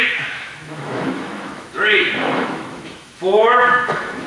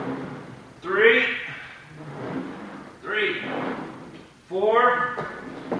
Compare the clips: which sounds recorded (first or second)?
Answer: second